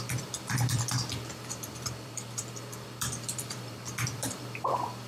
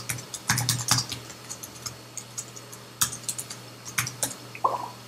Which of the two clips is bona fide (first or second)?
second